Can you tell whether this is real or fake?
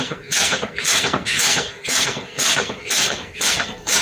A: fake